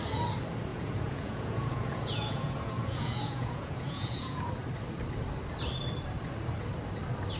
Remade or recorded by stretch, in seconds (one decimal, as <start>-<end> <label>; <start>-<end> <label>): 0.0-0.7 recorded; 0.7-4.5 remade; 4.5-7.4 recorded